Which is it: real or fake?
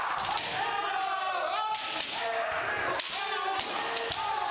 real